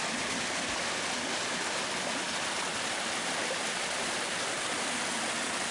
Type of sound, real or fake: real